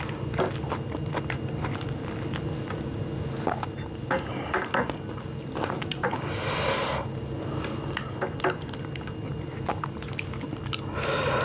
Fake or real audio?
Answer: real